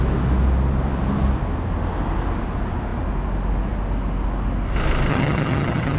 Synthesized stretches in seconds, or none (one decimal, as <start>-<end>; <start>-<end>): 5.1-6.0